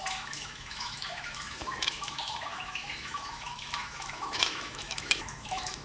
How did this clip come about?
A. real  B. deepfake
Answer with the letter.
B